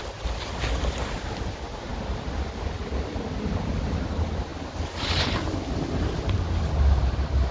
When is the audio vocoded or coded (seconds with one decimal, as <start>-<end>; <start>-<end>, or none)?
none